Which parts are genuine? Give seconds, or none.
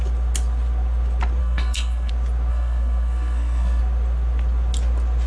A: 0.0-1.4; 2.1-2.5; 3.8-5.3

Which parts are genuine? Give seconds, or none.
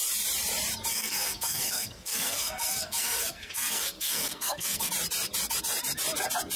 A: 0.0-0.9; 4.9-6.6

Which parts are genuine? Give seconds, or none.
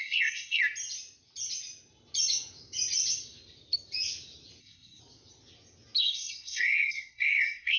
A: 0.6-4.6; 5.0-6.0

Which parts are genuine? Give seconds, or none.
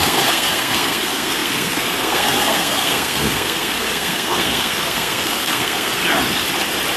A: 6.0-7.0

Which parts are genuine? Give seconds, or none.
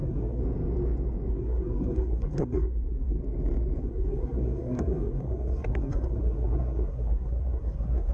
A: 0.4-1.3; 3.2-3.8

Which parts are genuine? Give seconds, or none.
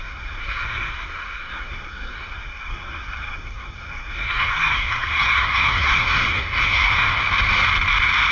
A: 7.2-8.3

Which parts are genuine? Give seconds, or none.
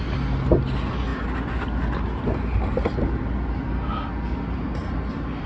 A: 0.0-5.5